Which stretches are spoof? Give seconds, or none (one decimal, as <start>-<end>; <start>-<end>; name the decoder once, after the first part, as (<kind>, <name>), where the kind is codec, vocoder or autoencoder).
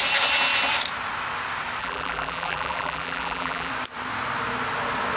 1.8-3.7 (vocoder, BigVGAN v2)